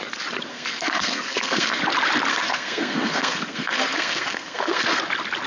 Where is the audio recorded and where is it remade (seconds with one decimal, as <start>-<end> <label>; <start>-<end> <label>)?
0.0-0.5 recorded; 0.5-1.8 remade; 1.8-2.3 recorded; 2.3-5.0 remade; 5.0-5.5 recorded